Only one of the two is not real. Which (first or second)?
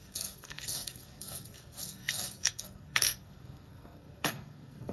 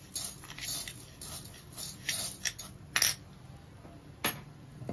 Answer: first